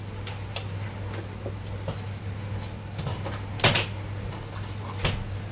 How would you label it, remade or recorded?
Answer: recorded